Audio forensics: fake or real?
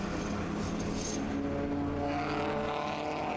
real